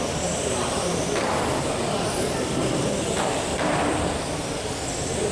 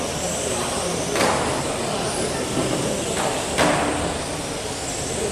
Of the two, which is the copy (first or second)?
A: first